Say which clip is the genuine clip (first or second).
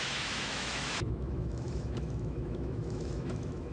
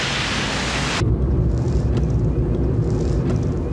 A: second